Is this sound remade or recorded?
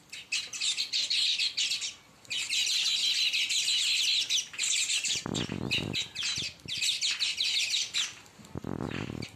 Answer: recorded